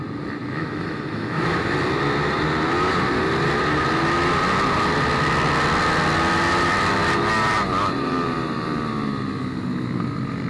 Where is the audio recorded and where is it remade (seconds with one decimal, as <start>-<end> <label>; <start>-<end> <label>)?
0.0-0.4 recorded; 0.4-1.7 remade; 1.7-10.5 recorded